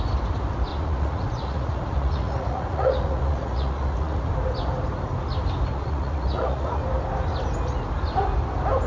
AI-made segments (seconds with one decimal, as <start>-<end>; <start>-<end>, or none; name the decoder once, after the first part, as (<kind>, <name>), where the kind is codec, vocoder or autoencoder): 0.7-4.3 (vocoder, Vocos); 5.7-6.8